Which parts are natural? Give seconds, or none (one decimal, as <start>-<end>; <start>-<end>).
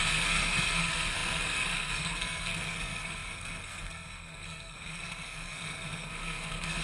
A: none